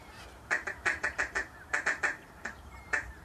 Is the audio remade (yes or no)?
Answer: yes